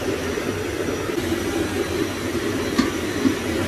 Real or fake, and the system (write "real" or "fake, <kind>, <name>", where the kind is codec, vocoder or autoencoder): real